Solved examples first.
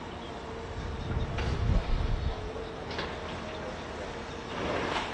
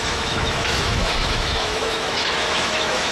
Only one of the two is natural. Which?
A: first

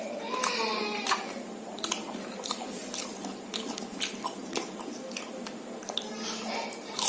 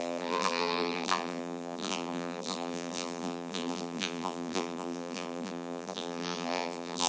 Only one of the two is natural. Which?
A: first